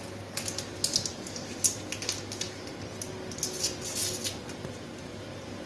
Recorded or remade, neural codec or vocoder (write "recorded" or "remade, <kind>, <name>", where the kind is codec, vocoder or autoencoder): recorded